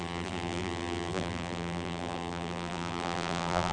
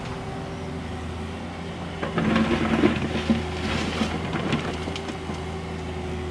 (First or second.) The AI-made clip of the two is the first